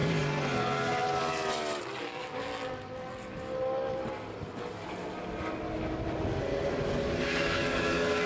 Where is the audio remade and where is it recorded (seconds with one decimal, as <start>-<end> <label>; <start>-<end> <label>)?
0.0-2.0 recorded; 2.0-2.5 remade; 2.5-7.2 recorded; 7.2-8.3 remade